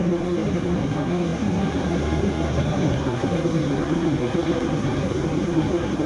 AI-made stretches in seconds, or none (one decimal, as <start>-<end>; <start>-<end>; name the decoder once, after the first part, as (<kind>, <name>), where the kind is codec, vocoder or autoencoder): 0.0-6.1 (codec, SNAC)